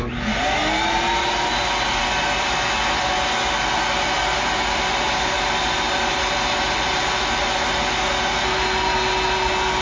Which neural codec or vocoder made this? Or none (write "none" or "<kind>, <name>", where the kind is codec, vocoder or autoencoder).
none